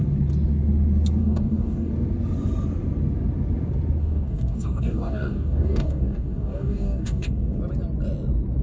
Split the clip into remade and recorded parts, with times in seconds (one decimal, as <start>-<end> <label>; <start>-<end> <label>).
0.0-1.2 recorded; 1.2-1.9 remade; 1.9-4.0 recorded; 4.0-7.6 remade; 7.6-8.6 recorded